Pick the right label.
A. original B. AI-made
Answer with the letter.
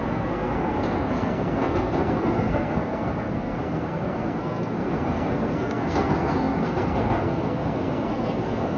B